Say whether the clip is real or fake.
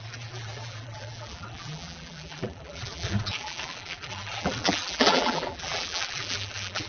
fake